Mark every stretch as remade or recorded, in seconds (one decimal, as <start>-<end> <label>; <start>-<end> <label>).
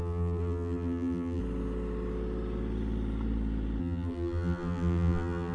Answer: 0.0-1.4 remade; 1.4-3.8 recorded; 3.8-5.5 remade